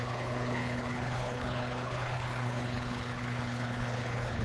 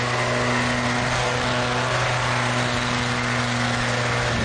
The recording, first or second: second